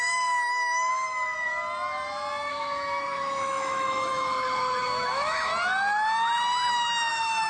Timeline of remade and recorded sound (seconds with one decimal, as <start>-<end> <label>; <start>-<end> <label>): 0.0-0.9 remade; 0.9-2.5 recorded; 2.5-5.5 remade; 5.5-6.7 recorded; 6.7-7.5 remade